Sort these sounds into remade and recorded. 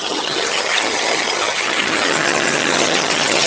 remade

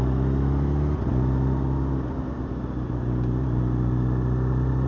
recorded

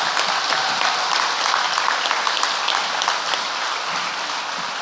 recorded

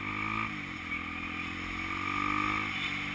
recorded